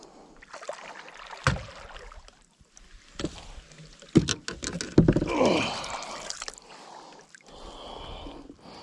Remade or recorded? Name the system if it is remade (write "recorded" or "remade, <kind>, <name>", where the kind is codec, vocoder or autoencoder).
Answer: recorded